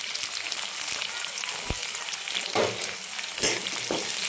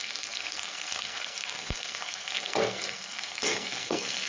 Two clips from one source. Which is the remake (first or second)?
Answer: second